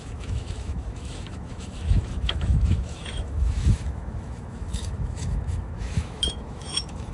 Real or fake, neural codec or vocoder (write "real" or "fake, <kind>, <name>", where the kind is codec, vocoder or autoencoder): fake, autoencoder, DAC-VAE